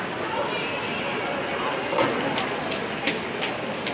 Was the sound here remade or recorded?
recorded